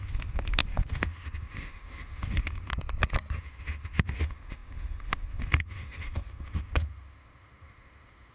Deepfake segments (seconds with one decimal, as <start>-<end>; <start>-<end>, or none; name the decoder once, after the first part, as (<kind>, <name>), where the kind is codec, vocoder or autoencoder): 0.0-2.7 (autoencoder, DAC-VAE); 3.4-8.3

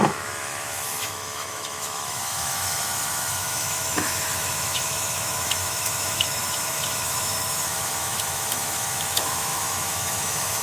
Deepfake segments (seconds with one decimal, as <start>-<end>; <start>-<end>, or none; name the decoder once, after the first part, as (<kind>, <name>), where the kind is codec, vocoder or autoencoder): 0.0-10.6 (autoencoder, DAC-VAE)